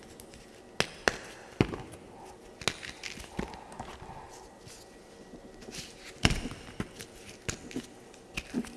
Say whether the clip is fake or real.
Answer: real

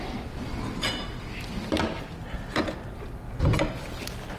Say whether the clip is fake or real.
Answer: real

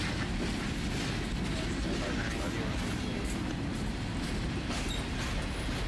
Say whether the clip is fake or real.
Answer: real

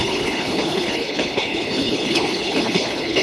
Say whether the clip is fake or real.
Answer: fake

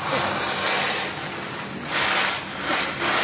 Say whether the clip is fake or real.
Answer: real